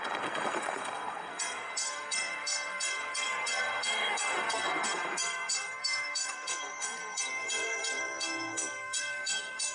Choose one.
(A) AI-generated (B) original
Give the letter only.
A